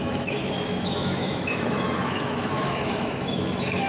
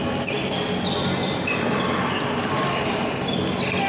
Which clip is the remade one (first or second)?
first